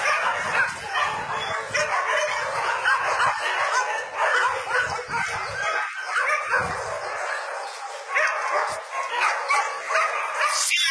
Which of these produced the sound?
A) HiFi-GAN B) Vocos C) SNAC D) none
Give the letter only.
D